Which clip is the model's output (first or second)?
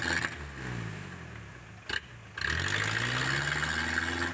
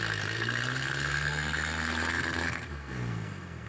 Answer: second